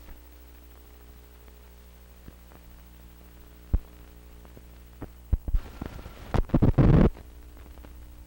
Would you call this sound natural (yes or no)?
yes